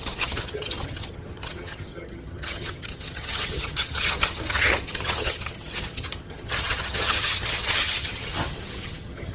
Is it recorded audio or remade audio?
remade